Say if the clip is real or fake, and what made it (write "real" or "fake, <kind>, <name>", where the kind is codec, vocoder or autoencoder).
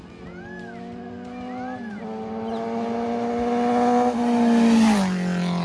real